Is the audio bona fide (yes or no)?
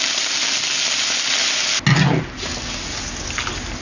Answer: yes